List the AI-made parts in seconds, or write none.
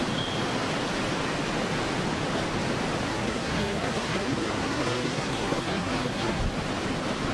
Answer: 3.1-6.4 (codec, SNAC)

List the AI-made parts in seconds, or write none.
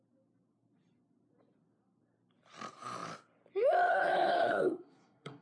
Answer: 3.9-5.4 (codec, SNAC)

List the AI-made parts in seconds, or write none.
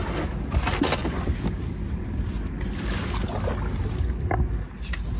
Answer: none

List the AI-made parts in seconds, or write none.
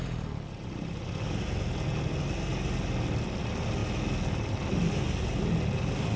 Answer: none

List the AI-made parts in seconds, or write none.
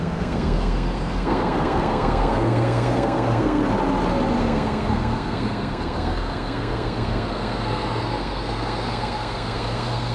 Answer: 0.0-3.6 (codec, SNAC); 4.4-10.1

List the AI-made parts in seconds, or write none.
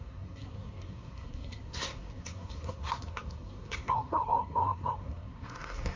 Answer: 0.0-6.0 (codec, SNAC)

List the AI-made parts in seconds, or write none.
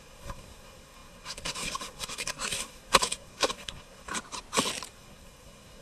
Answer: 0.0-4.1 (codec, SNAC); 4.9-5.8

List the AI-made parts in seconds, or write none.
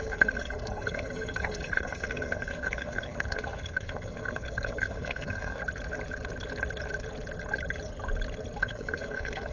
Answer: 0.0-5.6 (codec, SNAC); 8.6-9.5